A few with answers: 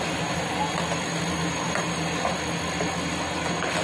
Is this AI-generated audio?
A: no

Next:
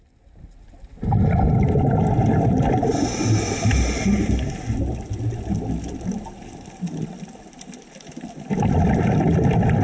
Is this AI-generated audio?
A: no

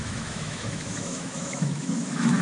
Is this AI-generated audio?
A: yes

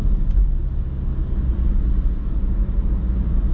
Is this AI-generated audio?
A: no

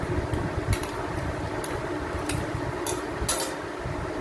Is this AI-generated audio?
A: no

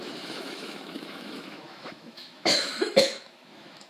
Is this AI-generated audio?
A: yes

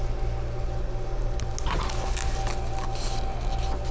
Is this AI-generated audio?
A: no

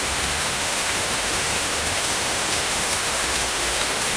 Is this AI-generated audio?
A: yes